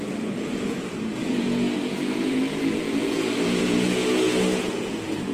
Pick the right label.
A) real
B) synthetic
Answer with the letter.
B